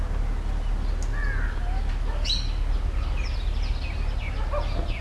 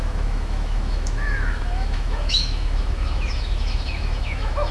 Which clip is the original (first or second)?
first